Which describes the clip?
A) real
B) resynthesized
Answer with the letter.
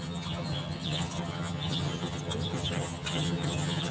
B